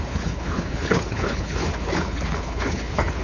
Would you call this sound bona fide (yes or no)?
no